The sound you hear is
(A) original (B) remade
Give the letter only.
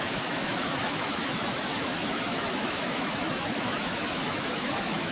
B